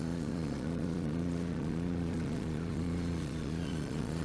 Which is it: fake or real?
fake